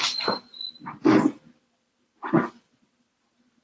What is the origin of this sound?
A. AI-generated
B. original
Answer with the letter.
A